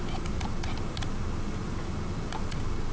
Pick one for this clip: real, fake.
real